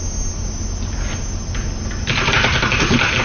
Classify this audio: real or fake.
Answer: real